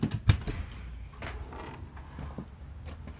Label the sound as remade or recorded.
recorded